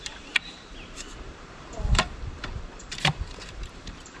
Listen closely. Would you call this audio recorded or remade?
remade